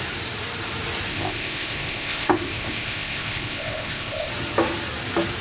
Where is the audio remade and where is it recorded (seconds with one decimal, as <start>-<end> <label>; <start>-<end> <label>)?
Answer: 0.0-1.1 recorded; 1.1-4.3 remade; 4.3-5.4 recorded